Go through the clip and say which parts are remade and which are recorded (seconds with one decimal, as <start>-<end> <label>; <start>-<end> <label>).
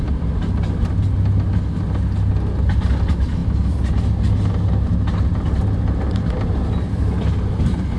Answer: 0.0-8.0 recorded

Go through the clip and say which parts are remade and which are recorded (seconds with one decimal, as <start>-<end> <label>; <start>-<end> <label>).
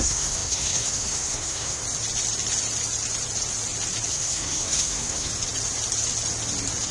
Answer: 0.0-1.8 remade; 1.8-4.1 recorded; 4.1-5.3 remade; 5.3-6.9 recorded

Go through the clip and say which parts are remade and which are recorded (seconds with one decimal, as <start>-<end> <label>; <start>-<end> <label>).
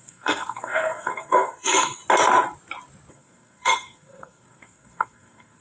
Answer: 0.0-2.0 remade; 2.0-3.1 recorded; 3.1-5.6 remade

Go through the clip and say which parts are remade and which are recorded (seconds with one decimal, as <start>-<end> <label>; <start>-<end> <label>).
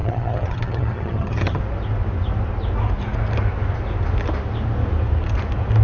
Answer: 0.0-1.6 remade; 1.6-5.8 recorded